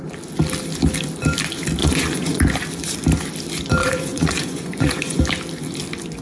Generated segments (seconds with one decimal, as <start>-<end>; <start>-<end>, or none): 1.8-2.4; 3.8-5.2